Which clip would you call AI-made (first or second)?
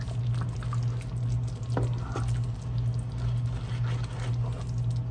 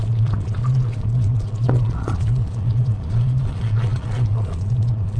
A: second